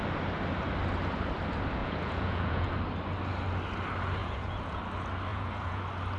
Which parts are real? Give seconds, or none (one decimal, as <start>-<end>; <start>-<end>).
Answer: 0.0-1.8; 2.7-4.2; 4.8-5.3; 5.8-6.2